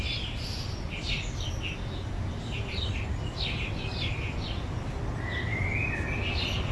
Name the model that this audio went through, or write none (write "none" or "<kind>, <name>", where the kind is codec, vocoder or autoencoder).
none